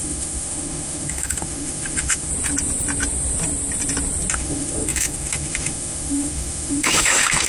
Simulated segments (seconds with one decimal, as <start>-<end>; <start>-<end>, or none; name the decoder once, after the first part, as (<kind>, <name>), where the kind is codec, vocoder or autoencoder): 0.0-2.3 (autoencoder, DAC-VAE); 4.3-7.5